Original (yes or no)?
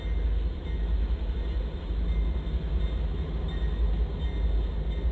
yes